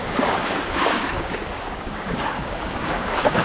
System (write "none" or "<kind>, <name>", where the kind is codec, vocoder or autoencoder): codec, DAC